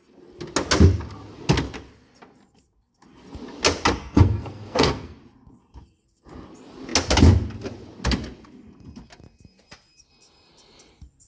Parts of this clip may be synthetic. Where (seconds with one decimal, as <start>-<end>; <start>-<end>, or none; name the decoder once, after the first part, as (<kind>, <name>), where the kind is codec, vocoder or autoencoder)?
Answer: 4.0-5.2 (codec, SNAC)